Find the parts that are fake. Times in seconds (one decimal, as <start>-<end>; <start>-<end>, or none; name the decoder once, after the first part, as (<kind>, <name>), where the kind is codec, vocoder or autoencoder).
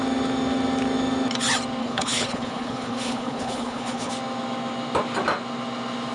1.8-4.1 (codec, HILCodec)